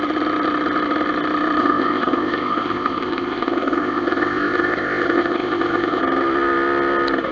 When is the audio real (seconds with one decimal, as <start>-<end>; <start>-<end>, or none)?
0.0-1.6; 6.0-7.3